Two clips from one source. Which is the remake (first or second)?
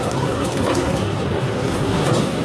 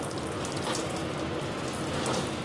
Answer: first